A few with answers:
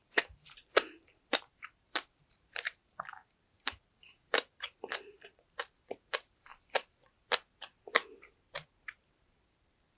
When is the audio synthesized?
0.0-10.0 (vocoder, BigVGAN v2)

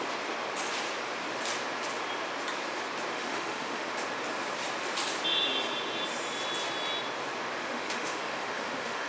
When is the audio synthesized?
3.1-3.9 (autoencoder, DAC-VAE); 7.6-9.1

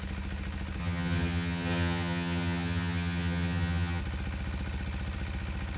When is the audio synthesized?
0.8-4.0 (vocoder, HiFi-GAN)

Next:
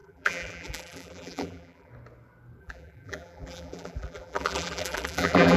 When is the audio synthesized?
0.0-1.9 (vocoder, BigVGAN v2); 2.6-5.6

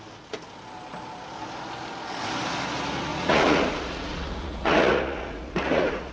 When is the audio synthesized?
3.1-6.1 (vocoder, Vocos)